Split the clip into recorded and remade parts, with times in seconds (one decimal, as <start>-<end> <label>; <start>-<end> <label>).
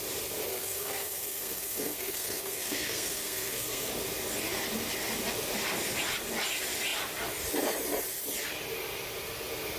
0.0-0.5 recorded; 0.5-3.9 remade; 3.9-9.8 recorded